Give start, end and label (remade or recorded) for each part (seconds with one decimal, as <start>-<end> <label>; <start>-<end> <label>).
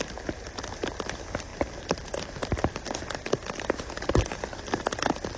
0.0-1.5 recorded; 1.5-3.8 remade; 3.8-5.4 recorded